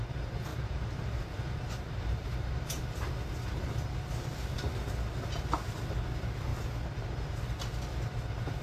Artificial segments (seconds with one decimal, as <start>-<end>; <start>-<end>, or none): 0.5-2.8